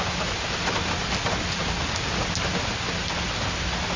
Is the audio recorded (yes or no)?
yes